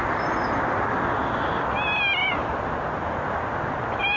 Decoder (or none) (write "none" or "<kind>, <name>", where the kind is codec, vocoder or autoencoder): none